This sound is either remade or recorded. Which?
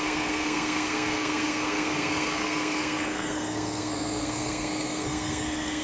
remade